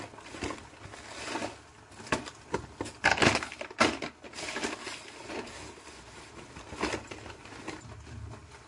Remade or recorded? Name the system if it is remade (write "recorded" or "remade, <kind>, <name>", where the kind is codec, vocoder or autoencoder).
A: recorded